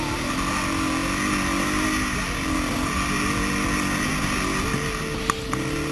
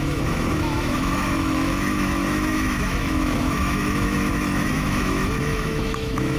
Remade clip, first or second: second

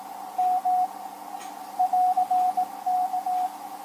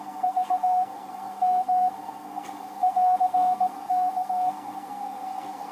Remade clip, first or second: second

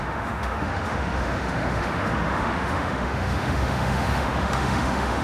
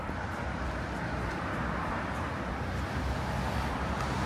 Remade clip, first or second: first